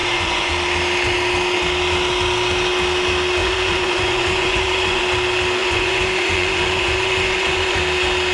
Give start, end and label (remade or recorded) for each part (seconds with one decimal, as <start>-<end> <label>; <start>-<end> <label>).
0.0-0.5 remade; 0.5-3.4 recorded; 3.4-5.0 remade; 5.0-5.6 recorded; 5.6-7.8 remade; 7.8-8.3 recorded